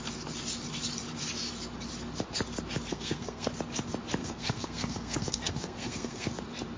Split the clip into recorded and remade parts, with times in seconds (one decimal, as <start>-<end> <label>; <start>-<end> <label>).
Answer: 0.0-2.9 recorded; 2.9-3.5 remade; 3.5-4.2 recorded; 4.2-6.3 remade; 6.3-6.8 recorded

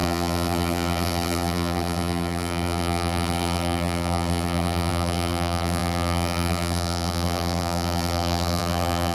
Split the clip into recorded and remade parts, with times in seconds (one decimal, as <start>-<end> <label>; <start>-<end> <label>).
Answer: 0.0-9.1 remade

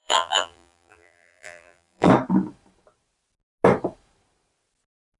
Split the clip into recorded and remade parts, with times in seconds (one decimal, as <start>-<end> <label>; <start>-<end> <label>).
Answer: 0.0-2.1 remade; 2.1-5.2 recorded

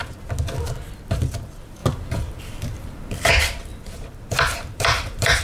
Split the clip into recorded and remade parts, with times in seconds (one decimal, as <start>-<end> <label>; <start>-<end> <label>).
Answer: 0.0-1.8 recorded; 1.8-3.3 remade; 3.3-3.7 recorded; 3.7-5.4 remade

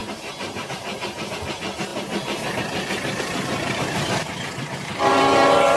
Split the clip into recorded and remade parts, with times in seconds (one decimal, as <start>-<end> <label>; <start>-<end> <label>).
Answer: 0.0-1.5 remade; 1.5-1.9 recorded; 1.9-5.8 remade

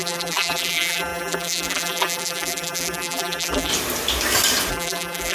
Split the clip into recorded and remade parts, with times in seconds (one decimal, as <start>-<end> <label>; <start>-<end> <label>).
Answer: 0.0-3.7 remade; 3.7-4.7 recorded; 4.7-5.3 remade

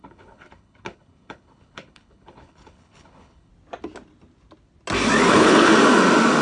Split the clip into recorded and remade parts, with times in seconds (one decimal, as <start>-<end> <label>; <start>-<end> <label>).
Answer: 0.0-3.5 remade; 3.5-5.3 recorded; 5.3-5.7 remade; 5.7-6.4 recorded

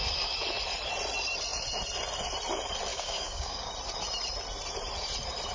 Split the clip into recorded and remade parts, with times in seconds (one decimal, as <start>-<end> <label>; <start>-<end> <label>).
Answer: 0.0-2.9 recorded; 2.9-3.7 remade; 3.7-5.5 recorded